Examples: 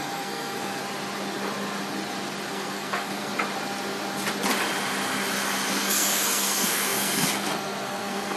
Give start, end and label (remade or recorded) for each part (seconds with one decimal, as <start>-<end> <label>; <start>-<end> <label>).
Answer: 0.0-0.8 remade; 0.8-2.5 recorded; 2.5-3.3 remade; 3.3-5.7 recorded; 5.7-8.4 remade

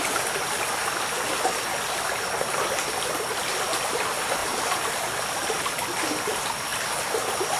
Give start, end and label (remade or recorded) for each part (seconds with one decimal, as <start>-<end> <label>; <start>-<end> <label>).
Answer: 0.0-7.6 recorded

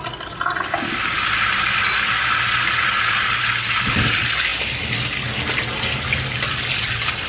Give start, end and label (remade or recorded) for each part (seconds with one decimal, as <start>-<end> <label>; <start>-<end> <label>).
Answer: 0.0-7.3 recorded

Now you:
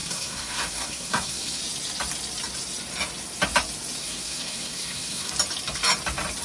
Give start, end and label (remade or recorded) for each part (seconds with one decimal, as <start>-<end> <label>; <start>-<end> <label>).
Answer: 0.0-1.6 remade; 1.6-4.0 recorded; 4.0-5.3 remade; 5.3-6.4 recorded

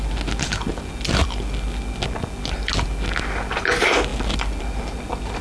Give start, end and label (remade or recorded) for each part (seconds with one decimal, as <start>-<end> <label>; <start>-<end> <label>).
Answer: 0.0-5.4 recorded

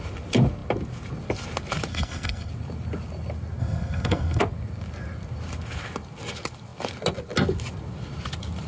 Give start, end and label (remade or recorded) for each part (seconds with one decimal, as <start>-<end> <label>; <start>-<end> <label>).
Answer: 0.0-1.9 recorded; 1.9-2.5 remade; 2.5-3.6 recorded; 3.6-4.4 remade; 4.4-8.7 recorded

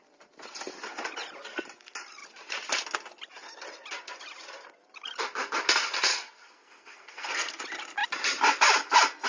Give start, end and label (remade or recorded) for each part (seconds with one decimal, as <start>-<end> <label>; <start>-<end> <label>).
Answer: 0.0-6.1 recorded; 6.1-7.6 remade; 7.6-9.3 recorded

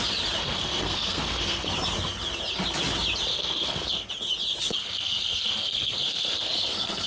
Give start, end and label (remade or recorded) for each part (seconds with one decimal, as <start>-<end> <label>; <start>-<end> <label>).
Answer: 0.0-0.4 recorded; 0.4-1.7 remade; 1.7-3.3 recorded; 3.3-4.1 remade; 4.1-4.8 recorded; 4.8-7.1 remade